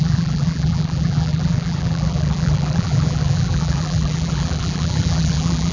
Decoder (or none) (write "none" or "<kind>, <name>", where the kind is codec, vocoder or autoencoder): vocoder, BigVGAN v2